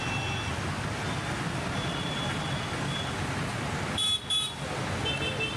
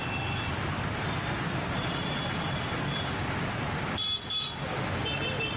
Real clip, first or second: first